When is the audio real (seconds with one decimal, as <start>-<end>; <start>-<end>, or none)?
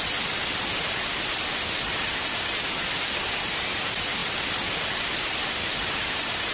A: 0.0-6.5